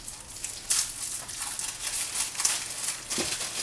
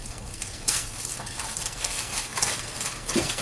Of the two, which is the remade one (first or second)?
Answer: second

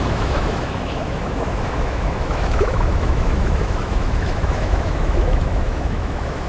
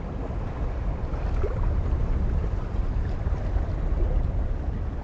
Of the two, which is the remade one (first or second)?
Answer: first